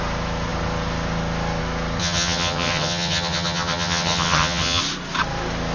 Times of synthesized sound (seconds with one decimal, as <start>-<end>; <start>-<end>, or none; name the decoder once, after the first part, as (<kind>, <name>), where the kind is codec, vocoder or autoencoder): 2.0-4.8 (vocoder, HiFi-GAN)